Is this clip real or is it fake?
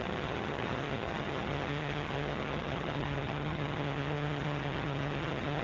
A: fake